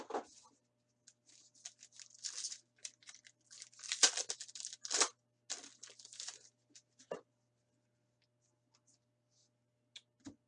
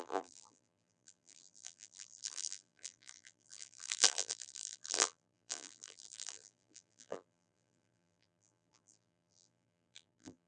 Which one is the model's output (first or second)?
second